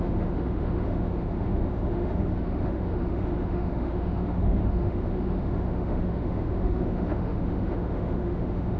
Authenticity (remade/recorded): remade